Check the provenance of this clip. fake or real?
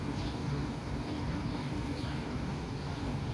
fake